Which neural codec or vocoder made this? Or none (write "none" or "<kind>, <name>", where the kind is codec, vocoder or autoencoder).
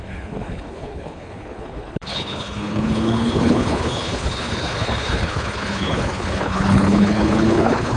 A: codec, HILCodec